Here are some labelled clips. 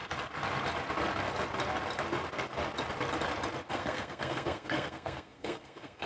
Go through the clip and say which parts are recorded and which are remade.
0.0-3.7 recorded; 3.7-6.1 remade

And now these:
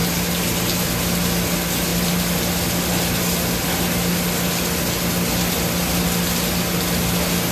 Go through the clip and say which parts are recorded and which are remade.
0.0-7.5 recorded

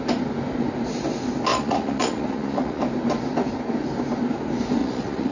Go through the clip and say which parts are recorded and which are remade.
0.0-1.5 recorded; 1.5-2.8 remade; 2.8-4.8 recorded; 4.8-5.3 remade

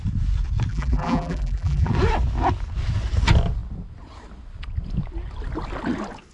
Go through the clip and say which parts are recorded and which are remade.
0.0-0.7 recorded; 0.7-1.9 remade; 1.9-6.3 recorded

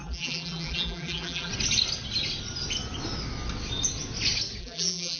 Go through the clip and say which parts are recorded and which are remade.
0.0-1.5 remade; 1.5-4.6 recorded; 4.6-5.2 remade